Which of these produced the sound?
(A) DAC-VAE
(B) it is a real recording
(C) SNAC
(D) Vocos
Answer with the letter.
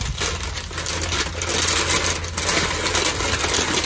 B